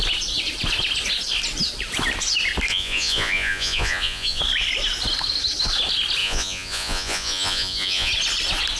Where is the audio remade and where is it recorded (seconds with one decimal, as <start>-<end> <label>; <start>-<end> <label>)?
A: 0.0-2.7 recorded; 2.7-4.4 remade; 4.4-6.2 recorded; 6.2-8.1 remade; 8.1-8.8 recorded